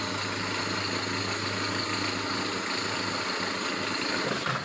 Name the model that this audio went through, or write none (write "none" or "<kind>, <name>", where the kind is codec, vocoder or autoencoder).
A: none